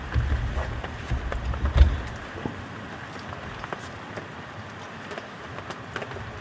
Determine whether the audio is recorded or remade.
recorded